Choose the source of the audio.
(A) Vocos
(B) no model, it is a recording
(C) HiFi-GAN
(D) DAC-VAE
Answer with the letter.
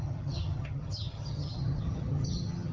C